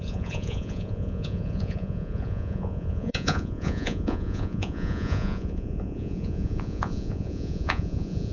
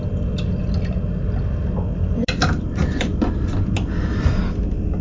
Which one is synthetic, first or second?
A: first